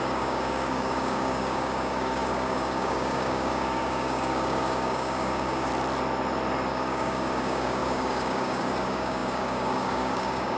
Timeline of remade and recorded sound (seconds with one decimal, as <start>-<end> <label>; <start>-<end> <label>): 0.0-5.7 remade; 5.7-6.7 recorded; 6.7-10.6 remade